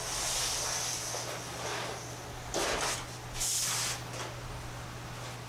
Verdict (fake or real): real